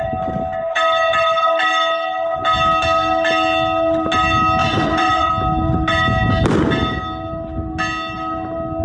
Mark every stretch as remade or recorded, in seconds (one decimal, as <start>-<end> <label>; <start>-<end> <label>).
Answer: 0.0-4.6 recorded; 4.6-5.3 remade; 5.3-8.8 recorded